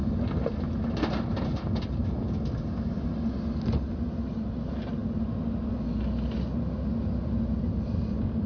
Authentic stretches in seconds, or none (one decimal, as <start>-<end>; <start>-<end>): 0.0-8.5